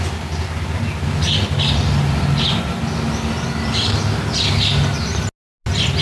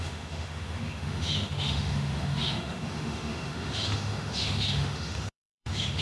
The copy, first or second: second